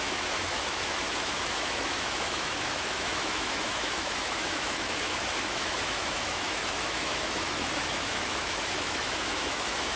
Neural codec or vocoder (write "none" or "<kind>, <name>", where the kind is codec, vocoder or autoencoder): autoencoder, DAC-VAE